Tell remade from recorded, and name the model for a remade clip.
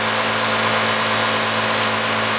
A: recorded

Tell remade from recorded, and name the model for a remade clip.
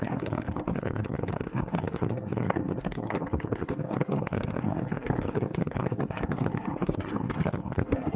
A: remade, codec, SNAC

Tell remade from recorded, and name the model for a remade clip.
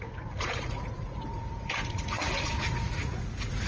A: remade, vocoder, Vocos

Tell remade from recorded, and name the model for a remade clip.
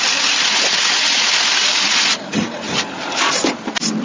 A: recorded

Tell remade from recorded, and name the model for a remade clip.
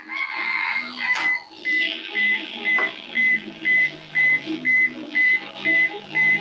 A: remade, vocoder, BigVGAN v2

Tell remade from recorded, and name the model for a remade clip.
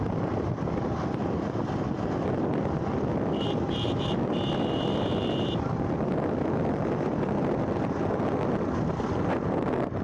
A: recorded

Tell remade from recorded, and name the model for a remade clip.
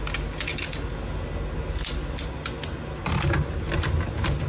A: recorded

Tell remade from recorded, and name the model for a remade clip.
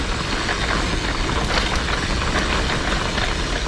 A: recorded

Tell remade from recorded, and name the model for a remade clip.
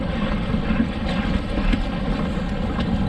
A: recorded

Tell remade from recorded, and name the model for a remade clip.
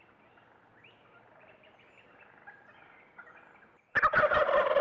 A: recorded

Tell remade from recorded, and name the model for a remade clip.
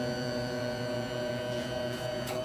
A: remade, vocoder, Vocos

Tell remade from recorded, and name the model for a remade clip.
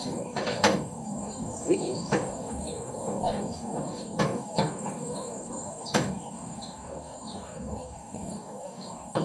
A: remade, codec, DAC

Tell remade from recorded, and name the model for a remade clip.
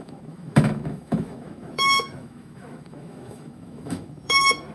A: remade, autoencoder, DAC-VAE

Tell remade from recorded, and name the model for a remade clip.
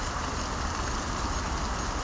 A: recorded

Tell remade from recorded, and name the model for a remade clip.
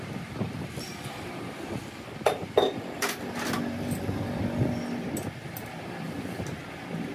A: recorded